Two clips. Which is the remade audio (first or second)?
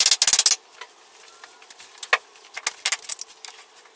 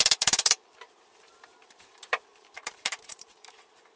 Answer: second